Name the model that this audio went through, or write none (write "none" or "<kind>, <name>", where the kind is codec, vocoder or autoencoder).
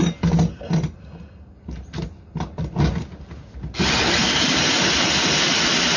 none